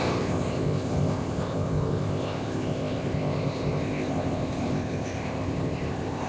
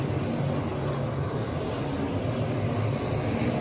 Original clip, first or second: second